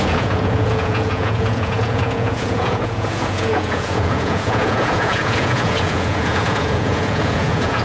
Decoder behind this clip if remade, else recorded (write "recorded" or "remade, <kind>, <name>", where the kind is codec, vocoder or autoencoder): remade, vocoder, Vocos